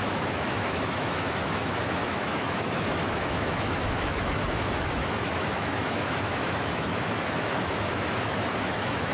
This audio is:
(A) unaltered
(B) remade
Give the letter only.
B